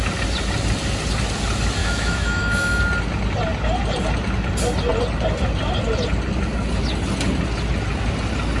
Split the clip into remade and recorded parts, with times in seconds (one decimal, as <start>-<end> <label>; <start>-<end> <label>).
0.0-1.8 recorded; 1.8-2.8 remade; 2.8-8.6 recorded